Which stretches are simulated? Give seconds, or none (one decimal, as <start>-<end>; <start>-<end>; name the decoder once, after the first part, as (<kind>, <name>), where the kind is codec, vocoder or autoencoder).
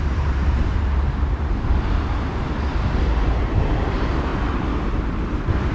0.0-0.9 (vocoder, BigVGAN v2); 3.8-4.3